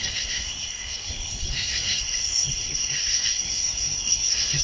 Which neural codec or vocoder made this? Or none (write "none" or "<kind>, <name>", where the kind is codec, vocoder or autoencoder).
codec, SNAC